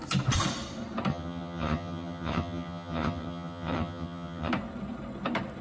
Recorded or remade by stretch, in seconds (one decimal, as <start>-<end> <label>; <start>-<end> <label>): 0.0-1.1 recorded; 1.1-4.5 remade; 4.5-5.6 recorded